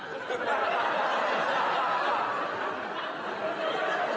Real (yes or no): yes